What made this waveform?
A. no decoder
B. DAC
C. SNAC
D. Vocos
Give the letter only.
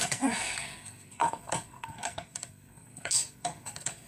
C